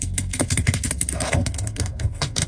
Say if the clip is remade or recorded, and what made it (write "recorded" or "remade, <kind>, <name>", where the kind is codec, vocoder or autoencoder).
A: remade, codec, SNAC